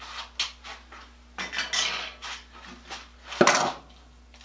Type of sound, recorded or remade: recorded